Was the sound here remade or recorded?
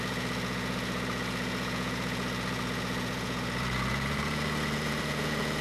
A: remade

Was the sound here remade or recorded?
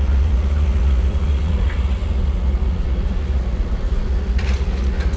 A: remade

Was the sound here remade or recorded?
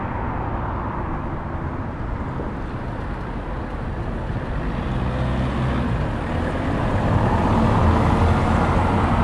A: recorded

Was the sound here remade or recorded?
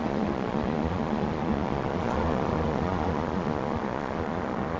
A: remade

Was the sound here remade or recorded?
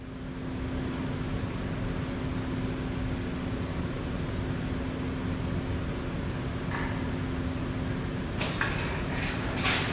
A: recorded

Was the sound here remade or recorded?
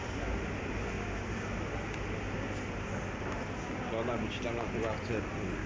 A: recorded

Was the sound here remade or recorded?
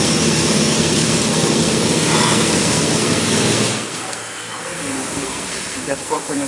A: remade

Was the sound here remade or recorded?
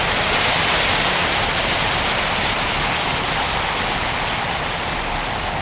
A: recorded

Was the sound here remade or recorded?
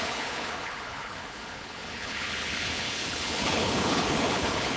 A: remade